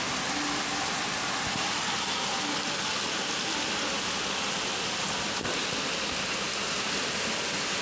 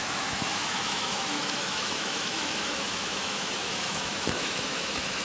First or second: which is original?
first